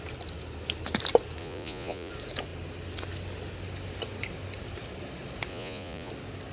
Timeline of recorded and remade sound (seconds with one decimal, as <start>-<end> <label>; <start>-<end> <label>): 0.0-1.4 recorded; 1.4-2.1 remade; 2.1-5.5 recorded; 5.5-6.1 remade; 6.1-6.5 recorded

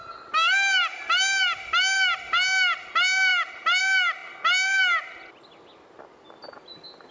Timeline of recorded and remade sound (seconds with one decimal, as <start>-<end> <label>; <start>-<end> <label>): 0.0-7.1 recorded

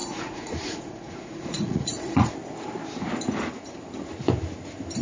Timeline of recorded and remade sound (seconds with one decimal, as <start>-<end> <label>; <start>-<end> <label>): 0.0-2.3 remade; 2.3-5.0 recorded